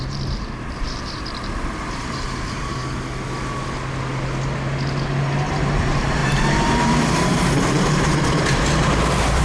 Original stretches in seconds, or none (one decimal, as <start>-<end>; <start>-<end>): 2.8-5.4